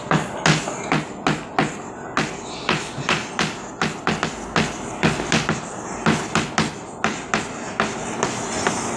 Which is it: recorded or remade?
recorded